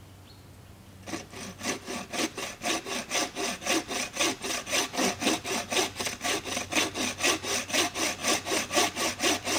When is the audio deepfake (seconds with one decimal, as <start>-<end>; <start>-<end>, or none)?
none